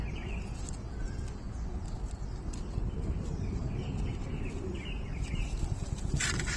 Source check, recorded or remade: recorded